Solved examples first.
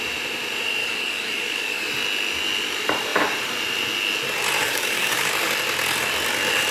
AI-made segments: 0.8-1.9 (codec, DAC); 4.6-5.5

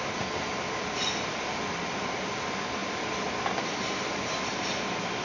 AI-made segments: none

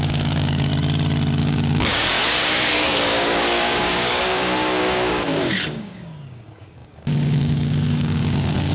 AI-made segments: 0.0-0.7 (codec, DAC); 1.4-8.7